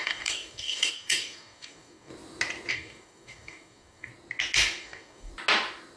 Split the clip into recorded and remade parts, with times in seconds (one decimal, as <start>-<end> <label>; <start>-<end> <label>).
0.0-2.1 remade; 2.1-2.7 recorded; 2.7-4.1 remade; 4.1-4.8 recorded; 4.8-5.3 remade; 5.3-6.0 recorded